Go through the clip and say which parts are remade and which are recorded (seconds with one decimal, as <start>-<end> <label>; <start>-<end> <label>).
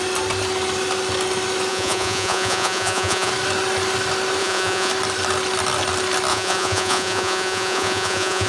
0.0-1.7 recorded; 1.7-3.3 remade; 3.3-4.4 recorded; 4.4-4.9 remade; 4.9-6.3 recorded; 6.3-8.5 remade